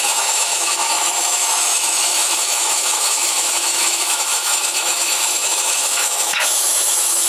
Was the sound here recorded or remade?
remade